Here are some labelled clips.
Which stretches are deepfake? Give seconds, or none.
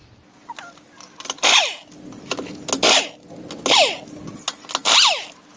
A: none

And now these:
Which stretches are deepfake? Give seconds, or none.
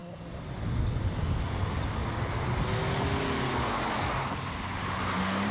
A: 0.0-0.6